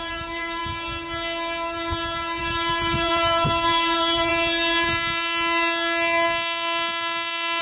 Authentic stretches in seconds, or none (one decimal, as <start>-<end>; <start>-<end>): 0.6-2.4; 4.3-7.6